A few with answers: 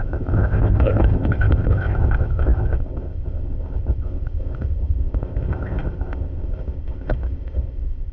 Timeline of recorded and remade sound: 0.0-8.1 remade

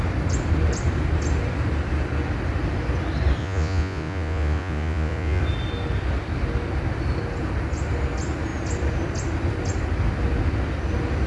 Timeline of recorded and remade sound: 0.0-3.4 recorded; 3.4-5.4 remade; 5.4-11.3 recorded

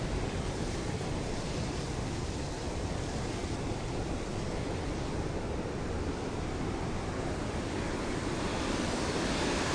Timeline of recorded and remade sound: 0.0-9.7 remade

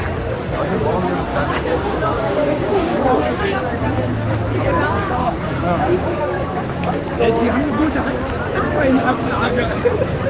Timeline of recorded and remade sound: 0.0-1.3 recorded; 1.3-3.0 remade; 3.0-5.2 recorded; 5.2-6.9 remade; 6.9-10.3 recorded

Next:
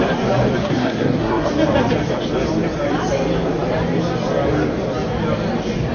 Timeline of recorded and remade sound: 0.0-0.6 recorded; 0.6-1.5 remade; 1.5-5.9 recorded